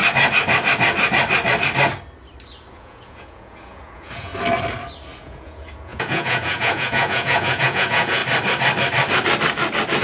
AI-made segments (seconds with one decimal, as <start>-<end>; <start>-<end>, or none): 2.7-4.3; 5.2-8.2